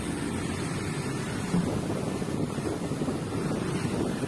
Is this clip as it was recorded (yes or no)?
yes